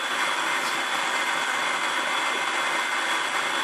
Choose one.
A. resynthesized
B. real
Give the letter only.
B